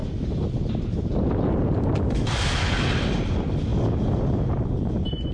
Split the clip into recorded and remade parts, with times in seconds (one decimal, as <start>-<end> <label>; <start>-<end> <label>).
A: 0.0-5.3 recorded